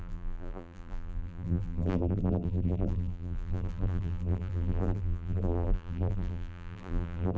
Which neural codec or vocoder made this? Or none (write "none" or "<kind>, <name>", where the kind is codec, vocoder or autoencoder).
vocoder, BigVGAN v2